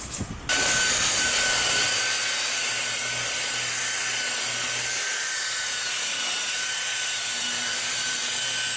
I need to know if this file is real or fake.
real